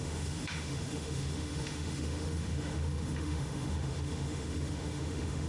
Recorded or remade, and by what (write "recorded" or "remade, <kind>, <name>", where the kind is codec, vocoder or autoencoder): remade, autoencoder, DAC-VAE